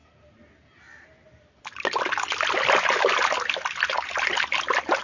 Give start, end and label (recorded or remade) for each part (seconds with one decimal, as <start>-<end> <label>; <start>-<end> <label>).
0.0-5.0 recorded